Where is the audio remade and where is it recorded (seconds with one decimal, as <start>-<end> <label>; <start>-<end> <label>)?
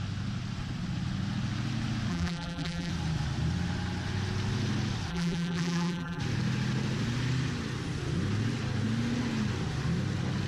0.0-2.1 recorded; 2.1-2.9 remade; 2.9-5.1 recorded; 5.1-6.2 remade; 6.2-10.5 recorded